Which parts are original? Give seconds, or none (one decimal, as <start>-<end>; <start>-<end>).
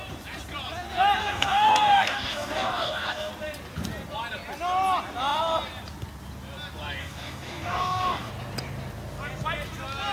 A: 0.0-1.2; 3.3-7.0; 8.3-10.1